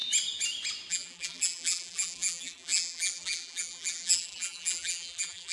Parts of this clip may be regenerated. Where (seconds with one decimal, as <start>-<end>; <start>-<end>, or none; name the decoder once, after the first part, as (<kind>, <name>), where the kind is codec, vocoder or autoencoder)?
0.9-5.5 (vocoder, BigVGAN v2)